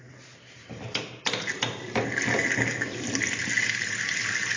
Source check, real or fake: real